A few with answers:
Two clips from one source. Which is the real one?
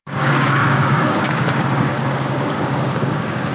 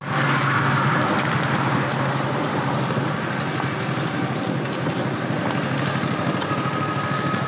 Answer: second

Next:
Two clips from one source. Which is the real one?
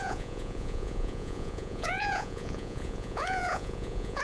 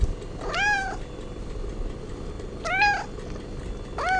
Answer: second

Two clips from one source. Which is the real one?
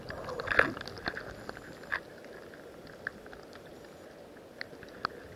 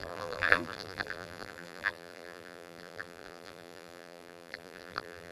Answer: first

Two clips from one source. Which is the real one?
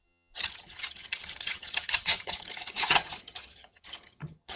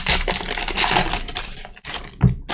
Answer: second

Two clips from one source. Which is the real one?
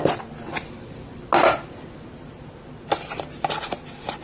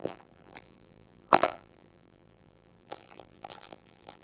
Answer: first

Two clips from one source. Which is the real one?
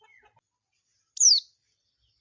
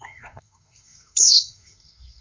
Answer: first